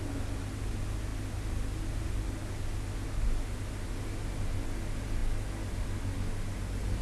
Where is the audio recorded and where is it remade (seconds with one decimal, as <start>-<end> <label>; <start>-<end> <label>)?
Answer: 0.0-7.0 recorded